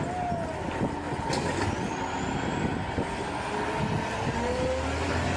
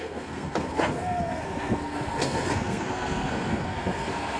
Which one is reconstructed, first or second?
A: second